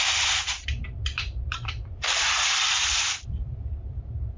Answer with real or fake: fake